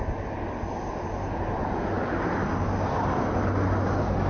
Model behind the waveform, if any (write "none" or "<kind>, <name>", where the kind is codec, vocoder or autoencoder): none